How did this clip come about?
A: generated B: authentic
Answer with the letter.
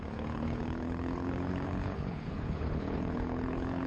A